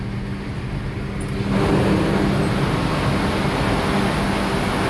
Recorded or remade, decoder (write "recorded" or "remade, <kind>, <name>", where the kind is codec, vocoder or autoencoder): recorded